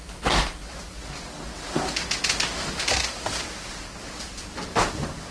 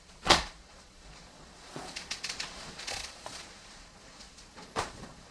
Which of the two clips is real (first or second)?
first